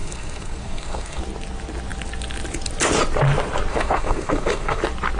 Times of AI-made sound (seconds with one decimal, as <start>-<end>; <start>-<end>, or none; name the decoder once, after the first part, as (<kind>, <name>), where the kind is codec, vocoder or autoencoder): 0.0-1.2 (codec, SNAC); 3.7-4.8